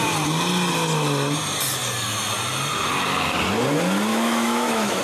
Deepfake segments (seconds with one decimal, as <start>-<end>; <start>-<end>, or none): 4.1-5.0